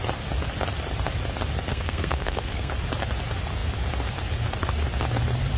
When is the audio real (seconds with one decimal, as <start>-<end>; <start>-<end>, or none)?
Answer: 0.0-1.7; 2.7-5.6